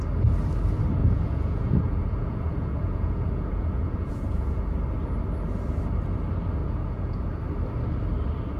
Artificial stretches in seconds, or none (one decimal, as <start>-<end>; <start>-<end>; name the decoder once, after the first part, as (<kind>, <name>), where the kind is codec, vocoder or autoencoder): 1.0-4.6 (vocoder, Vocos); 6.6-7.4